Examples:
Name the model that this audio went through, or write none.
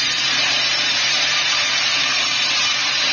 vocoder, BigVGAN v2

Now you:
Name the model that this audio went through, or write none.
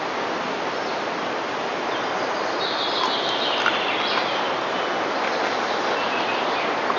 none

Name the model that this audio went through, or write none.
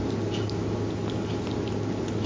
none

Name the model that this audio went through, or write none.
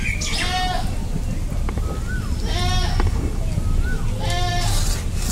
none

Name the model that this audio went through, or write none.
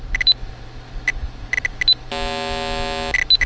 none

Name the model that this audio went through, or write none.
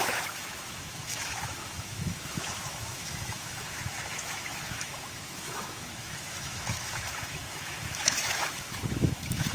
autoencoder, DAC-VAE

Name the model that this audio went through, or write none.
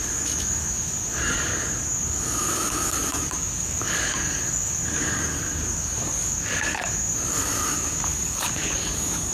codec, DAC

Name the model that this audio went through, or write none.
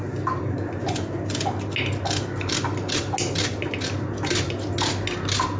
none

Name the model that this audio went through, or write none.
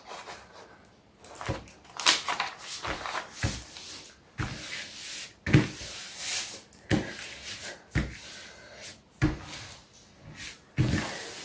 none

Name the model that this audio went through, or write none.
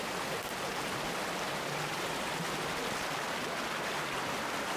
none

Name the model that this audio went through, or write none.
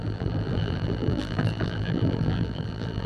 vocoder, BigVGAN v2